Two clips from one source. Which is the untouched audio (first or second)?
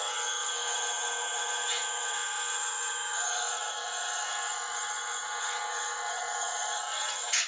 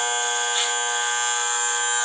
second